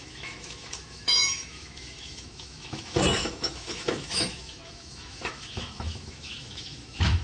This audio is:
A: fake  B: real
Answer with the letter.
A